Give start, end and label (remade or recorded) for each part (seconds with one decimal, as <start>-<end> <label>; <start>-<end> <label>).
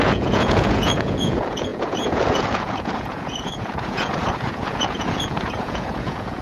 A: 0.0-6.4 remade